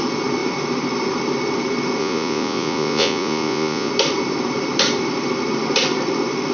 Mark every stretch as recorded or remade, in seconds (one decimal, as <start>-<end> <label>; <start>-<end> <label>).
0.0-2.0 recorded; 2.0-3.9 remade; 3.9-6.5 recorded